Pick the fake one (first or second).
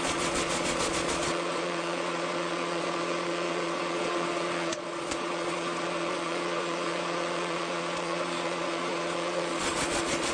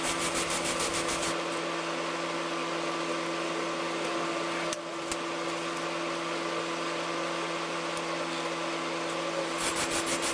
first